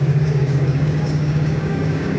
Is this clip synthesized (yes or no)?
yes